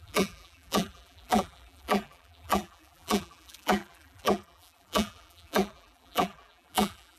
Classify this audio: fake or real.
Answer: fake